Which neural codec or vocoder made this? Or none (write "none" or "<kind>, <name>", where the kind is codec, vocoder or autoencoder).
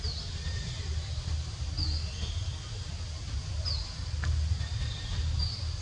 none